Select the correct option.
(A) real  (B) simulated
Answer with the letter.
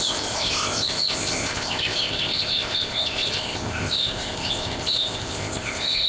B